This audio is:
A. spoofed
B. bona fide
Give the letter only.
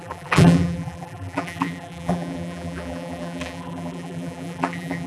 A